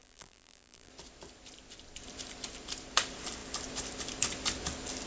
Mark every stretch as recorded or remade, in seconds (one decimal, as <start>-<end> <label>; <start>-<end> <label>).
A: 0.0-0.9 remade; 0.9-5.1 recorded